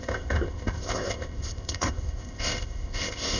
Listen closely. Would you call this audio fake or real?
fake